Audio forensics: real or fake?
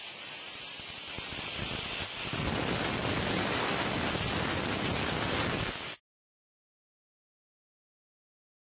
real